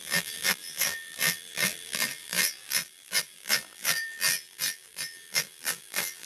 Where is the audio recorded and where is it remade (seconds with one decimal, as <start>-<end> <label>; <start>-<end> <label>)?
0.0-6.3 remade